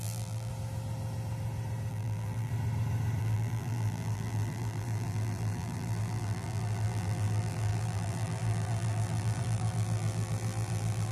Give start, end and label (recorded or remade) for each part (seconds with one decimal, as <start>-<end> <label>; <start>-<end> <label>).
0.0-0.5 remade; 0.5-1.9 recorded; 1.9-2.5 remade; 2.5-3.2 recorded; 3.2-11.1 remade